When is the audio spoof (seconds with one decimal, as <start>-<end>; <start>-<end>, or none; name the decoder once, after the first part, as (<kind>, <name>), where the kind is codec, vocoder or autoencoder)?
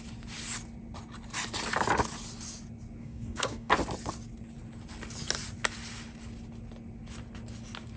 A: 3.0-3.7 (codec, DAC)